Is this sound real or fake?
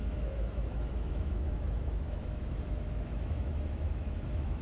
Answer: fake